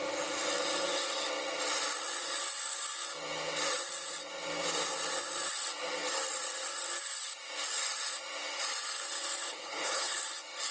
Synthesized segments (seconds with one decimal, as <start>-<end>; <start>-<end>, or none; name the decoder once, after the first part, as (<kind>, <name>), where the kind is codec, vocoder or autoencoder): 9.5-10.2 (codec, HILCodec)